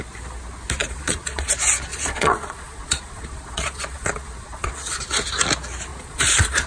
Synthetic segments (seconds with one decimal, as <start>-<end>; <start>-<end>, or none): 0.8-1.5; 1.9-5.0; 5.9-6.7